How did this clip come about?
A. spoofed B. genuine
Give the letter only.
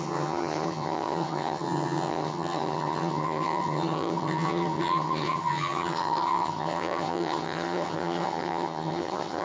A